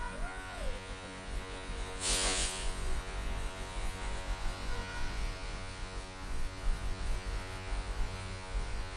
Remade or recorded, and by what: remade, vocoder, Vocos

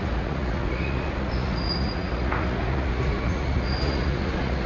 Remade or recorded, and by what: remade, vocoder, Vocos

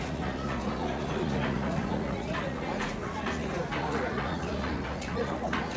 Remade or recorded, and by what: remade, vocoder, Vocos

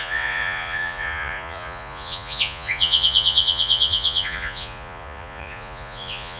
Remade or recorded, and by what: remade, vocoder, Vocos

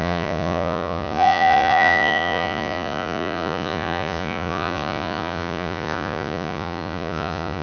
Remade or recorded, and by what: remade, vocoder, Vocos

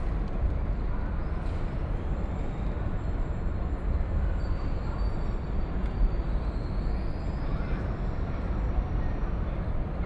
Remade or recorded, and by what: recorded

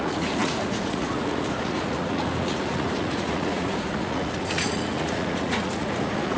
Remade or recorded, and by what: remade, vocoder, Vocos